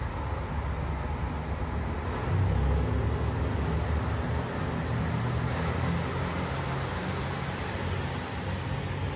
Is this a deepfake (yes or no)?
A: no